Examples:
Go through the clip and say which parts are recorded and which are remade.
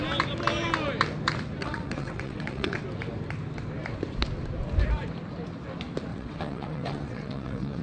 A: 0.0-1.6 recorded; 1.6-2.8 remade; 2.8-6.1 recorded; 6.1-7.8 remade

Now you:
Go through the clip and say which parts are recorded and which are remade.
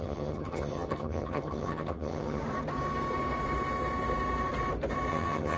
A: 0.0-2.4 remade; 2.4-5.1 recorded; 5.1-5.6 remade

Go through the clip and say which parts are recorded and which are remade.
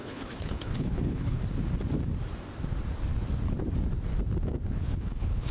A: 0.0-1.4 remade; 1.4-4.7 recorded; 4.7-5.5 remade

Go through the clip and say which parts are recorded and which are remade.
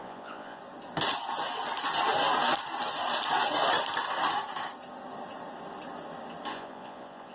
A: 0.0-0.6 remade; 0.6-6.5 recorded; 6.5-7.3 remade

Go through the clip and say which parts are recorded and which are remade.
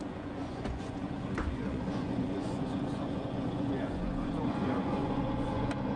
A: 0.0-6.0 remade